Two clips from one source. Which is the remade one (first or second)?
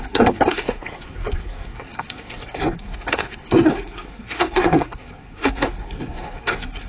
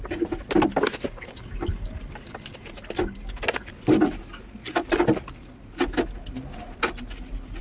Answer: first